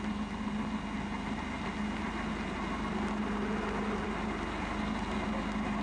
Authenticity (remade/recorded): recorded